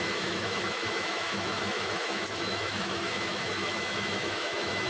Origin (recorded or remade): remade